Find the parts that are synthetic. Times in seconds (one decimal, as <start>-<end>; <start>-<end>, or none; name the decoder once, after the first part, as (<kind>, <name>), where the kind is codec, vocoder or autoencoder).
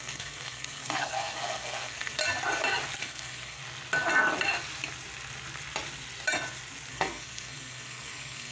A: 0.0-2.2 (codec, SNAC); 3.0-3.6; 6.9-8.5